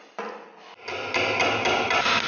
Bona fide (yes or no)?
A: yes